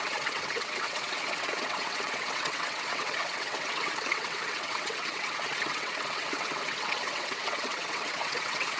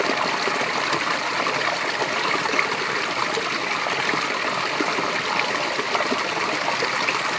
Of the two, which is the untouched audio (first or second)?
second